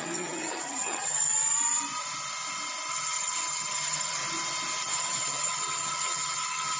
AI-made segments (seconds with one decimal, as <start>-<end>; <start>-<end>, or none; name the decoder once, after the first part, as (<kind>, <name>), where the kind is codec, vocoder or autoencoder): 0.0-1.3 (vocoder, HiFi-GAN); 2.9-4.2; 4.8-6.8

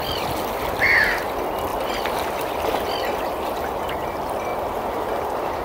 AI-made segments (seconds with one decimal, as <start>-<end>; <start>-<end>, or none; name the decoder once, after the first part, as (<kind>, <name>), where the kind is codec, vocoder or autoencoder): none

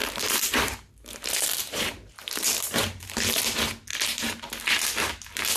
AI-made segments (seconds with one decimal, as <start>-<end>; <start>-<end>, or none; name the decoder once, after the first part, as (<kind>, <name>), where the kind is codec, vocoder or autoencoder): 0.0-3.4 (vocoder, BigVGAN v2); 3.9-4.5

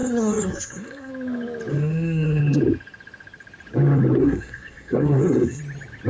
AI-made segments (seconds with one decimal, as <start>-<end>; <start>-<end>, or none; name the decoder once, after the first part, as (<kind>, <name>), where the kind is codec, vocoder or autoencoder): 0.0-1.1 (codec, SNAC); 1.7-2.4; 4.2-5.6

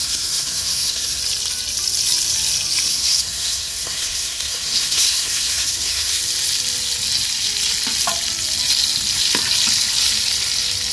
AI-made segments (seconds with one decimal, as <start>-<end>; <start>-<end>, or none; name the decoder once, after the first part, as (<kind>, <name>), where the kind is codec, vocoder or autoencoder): 0.0-1.2 (codec, SNAC); 2.9-6.2

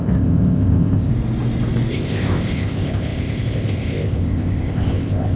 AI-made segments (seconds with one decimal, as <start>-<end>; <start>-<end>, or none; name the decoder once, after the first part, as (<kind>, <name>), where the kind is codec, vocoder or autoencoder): 0.0-1.1 (codec, ZipCodec); 1.9-5.4

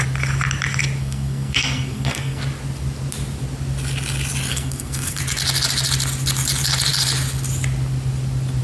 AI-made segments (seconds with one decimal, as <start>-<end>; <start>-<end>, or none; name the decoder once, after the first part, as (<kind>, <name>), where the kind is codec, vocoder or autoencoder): 1.0-2.4 (codec, SNAC); 4.5-5.2